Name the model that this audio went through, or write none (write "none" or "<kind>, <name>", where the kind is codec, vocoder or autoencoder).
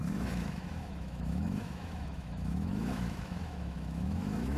autoencoder, DAC-VAE